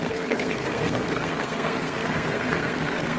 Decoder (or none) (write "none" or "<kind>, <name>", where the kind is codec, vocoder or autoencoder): codec, SNAC